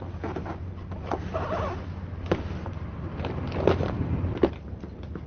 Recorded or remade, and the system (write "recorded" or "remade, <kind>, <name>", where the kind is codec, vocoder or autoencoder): recorded